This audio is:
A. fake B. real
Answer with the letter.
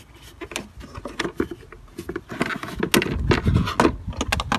B